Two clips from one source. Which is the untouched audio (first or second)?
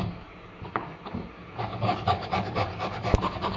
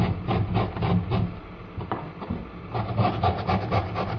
second